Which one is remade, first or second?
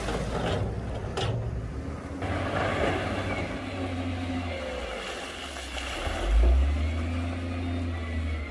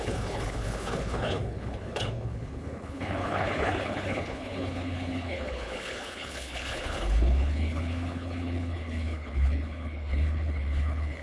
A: second